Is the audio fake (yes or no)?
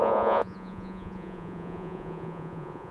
yes